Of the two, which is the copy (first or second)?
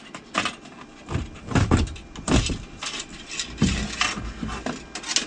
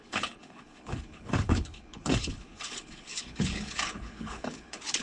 second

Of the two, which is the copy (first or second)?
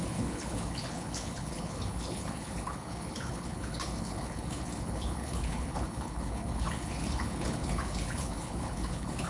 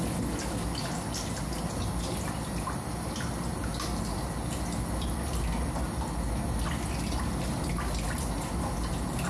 first